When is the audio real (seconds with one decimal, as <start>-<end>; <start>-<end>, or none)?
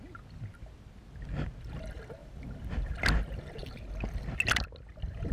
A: 0.0-2.2; 2.9-5.3